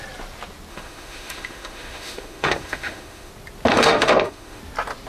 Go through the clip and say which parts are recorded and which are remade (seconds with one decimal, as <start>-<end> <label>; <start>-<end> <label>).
0.0-0.7 recorded; 0.7-3.3 remade; 3.3-3.7 recorded; 3.7-4.6 remade; 4.6-5.1 recorded